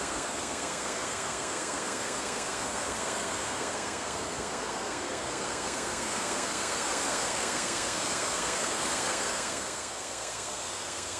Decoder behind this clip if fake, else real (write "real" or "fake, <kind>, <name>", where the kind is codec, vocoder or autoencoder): fake, codec, SNAC